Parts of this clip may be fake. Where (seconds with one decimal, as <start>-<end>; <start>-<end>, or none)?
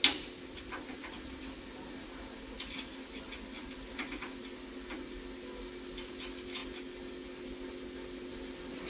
none